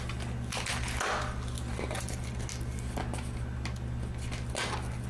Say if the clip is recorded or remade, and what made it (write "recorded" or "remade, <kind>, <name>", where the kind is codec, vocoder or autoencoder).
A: recorded